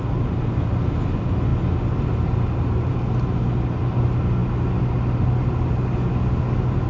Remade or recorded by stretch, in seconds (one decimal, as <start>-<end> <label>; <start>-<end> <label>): 0.0-6.9 recorded